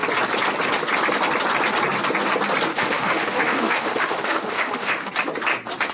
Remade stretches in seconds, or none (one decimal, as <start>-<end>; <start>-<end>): 2.7-5.1